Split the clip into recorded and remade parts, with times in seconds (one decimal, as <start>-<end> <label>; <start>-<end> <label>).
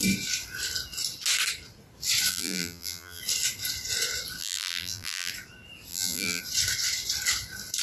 0.0-2.3 recorded; 2.3-3.2 remade; 3.2-4.4 recorded; 4.4-5.3 remade; 5.3-5.9 recorded; 5.9-6.4 remade; 6.4-7.8 recorded